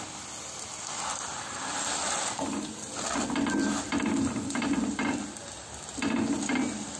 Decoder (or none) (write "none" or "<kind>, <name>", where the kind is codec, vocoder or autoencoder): none